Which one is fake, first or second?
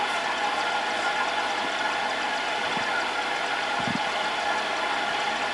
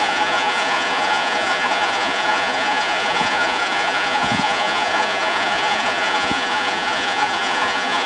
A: second